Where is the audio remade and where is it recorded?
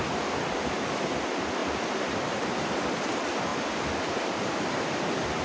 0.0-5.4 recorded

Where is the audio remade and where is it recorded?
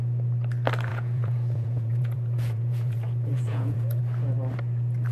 0.0-0.9 recorded; 0.9-4.0 remade; 4.0-5.1 recorded